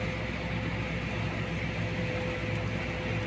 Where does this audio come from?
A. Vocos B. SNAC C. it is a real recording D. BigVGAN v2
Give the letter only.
C